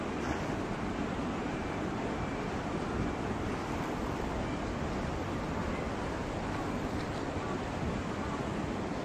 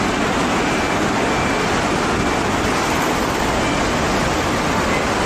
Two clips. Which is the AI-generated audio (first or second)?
first